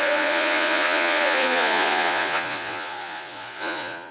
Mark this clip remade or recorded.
remade